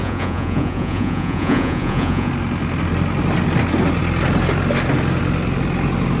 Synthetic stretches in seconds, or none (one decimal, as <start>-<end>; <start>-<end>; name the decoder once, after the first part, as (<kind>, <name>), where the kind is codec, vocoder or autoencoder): 0.0-2.3 (vocoder, Vocos)